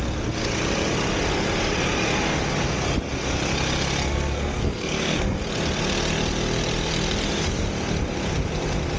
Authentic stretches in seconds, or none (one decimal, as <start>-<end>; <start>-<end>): 0.0-4.1; 5.4-9.0